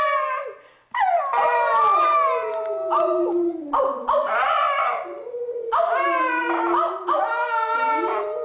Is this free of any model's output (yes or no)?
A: yes